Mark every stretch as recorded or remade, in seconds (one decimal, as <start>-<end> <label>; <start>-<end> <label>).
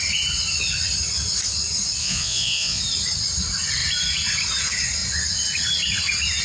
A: 0.0-2.0 recorded; 2.0-2.8 remade; 2.8-6.4 recorded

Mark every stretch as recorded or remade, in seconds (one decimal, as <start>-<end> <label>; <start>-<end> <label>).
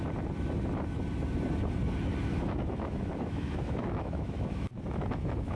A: 0.0-2.3 recorded; 2.3-5.6 remade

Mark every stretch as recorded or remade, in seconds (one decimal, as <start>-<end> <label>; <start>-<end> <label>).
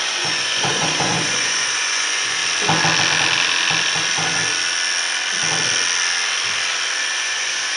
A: 0.0-2.4 remade; 2.4-7.1 recorded; 7.1-7.8 remade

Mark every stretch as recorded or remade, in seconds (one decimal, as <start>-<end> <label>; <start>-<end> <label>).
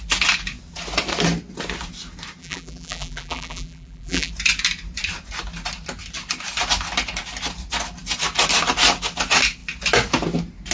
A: 0.0-2.4 recorded; 2.4-4.3 remade; 4.3-10.7 recorded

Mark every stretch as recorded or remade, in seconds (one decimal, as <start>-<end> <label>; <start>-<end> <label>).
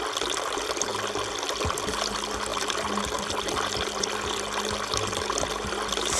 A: 0.0-6.2 recorded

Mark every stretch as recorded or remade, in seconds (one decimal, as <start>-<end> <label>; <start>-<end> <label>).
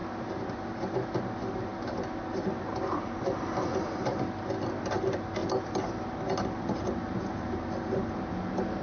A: 0.0-8.8 recorded